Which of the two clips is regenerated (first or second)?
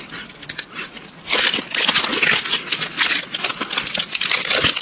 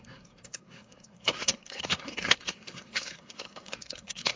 second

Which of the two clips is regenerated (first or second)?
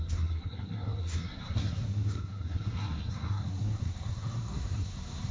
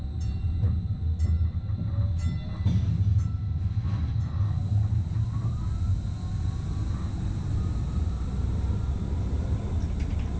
first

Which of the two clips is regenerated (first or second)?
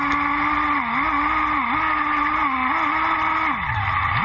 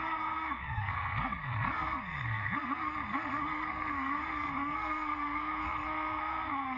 second